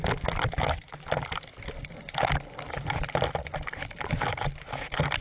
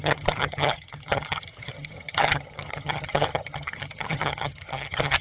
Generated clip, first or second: second